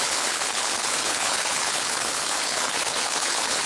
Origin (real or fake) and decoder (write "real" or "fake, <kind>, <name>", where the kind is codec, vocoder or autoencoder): fake, codec, HILCodec